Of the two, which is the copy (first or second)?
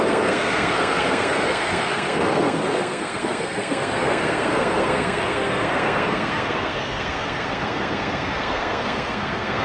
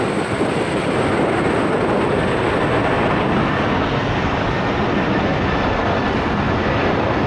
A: first